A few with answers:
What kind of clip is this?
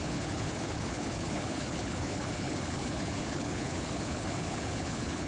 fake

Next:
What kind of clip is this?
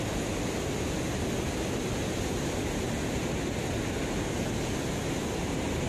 real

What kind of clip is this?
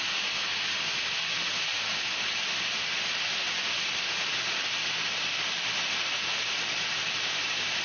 real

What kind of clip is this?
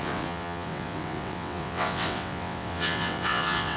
fake